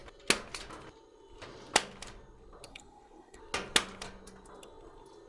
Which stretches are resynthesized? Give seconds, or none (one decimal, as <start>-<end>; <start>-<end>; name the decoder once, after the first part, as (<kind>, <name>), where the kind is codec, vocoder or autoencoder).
2.7-3.4 (codec, SNAC)